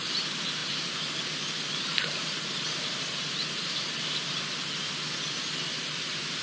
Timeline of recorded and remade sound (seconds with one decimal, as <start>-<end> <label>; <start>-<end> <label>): 0.0-0.6 recorded; 0.6-4.4 remade; 4.4-6.4 recorded